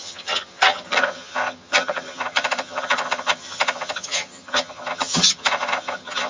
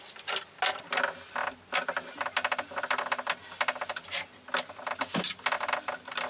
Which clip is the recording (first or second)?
second